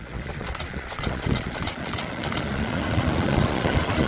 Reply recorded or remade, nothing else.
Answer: remade